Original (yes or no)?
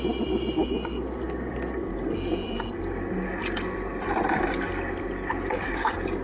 yes